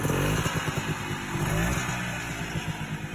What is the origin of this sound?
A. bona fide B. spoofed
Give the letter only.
A